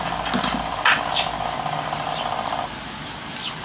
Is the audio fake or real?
real